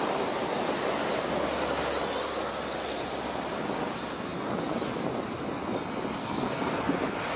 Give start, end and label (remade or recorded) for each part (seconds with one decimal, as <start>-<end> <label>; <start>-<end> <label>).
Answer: 0.0-6.2 recorded; 6.2-6.8 remade; 6.8-7.4 recorded